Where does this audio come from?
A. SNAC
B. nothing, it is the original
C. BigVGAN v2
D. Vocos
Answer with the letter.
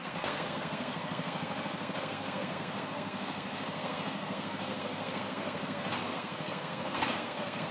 A